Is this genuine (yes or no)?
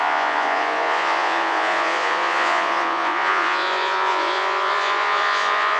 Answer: no